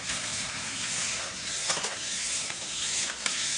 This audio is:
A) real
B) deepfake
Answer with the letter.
B